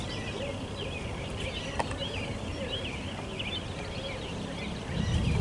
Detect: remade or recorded recorded